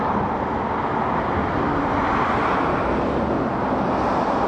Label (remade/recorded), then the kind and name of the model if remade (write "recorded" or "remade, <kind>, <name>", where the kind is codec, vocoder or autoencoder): recorded